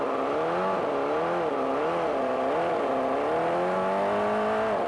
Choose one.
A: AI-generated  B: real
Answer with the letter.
B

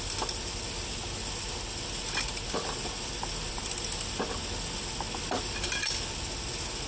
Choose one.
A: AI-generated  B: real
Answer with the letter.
B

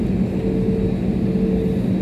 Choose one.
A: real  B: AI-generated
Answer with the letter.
A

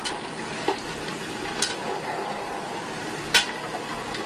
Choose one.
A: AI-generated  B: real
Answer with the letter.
A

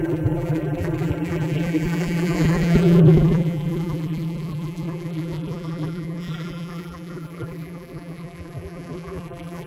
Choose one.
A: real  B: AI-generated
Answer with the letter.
B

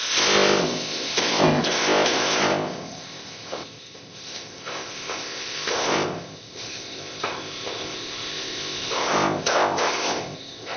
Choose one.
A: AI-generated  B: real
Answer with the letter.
A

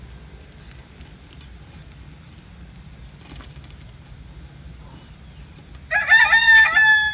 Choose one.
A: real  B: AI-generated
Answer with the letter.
A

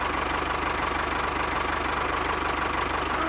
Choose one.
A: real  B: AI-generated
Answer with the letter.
A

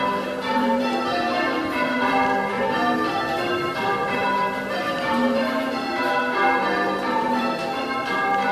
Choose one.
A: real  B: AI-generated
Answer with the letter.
B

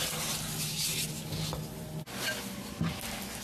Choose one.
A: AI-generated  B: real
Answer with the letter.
B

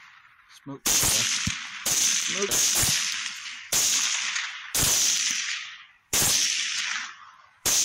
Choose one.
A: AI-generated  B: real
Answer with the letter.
A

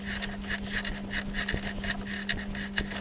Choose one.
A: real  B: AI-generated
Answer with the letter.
A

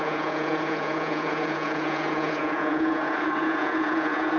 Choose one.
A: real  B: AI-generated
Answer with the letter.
B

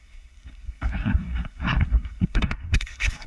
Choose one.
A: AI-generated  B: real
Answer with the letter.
A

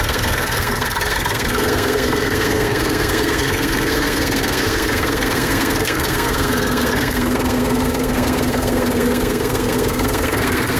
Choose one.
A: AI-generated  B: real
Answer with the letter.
A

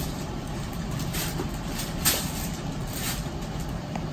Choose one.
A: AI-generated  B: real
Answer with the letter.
B